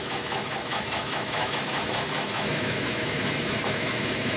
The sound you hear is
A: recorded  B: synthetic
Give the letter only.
B